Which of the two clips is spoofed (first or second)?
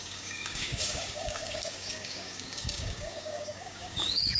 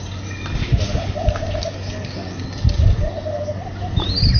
first